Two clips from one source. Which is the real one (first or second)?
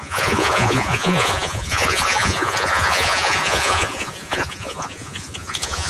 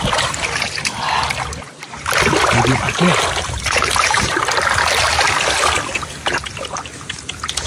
second